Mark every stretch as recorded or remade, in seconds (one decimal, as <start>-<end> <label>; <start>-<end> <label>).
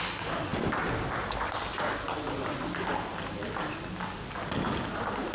0.0-5.3 recorded